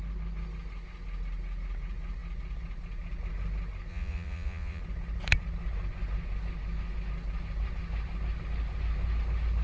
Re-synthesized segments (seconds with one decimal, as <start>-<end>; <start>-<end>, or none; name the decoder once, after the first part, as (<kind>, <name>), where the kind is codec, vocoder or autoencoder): 3.9-4.8 (vocoder, Vocos)